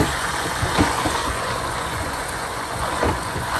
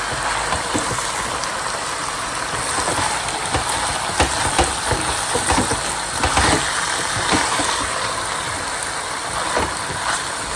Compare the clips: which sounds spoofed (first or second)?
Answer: first